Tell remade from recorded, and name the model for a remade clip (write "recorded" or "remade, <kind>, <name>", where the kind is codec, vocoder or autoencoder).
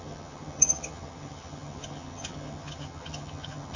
remade, vocoder, HiFi-GAN